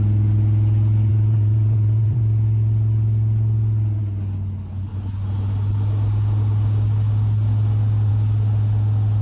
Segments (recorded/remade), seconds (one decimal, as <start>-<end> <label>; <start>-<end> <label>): 0.0-1.1 recorded; 1.1-2.2 remade; 2.2-9.2 recorded